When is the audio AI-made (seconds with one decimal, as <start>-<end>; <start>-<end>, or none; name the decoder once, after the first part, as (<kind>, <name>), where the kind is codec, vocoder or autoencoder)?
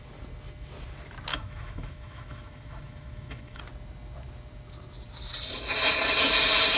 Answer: 1.3-3.6 (autoencoder, DAC-VAE)